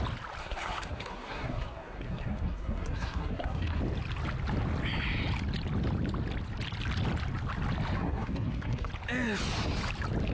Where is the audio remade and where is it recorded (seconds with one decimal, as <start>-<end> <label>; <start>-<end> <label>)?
0.0-0.4 recorded; 0.4-3.8 remade; 3.8-8.0 recorded; 8.0-8.9 remade; 8.9-10.3 recorded